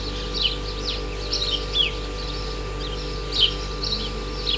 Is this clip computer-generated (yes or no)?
no